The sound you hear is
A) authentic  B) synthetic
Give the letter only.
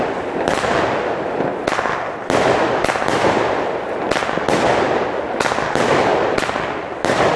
A